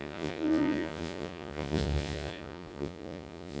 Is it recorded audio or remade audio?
remade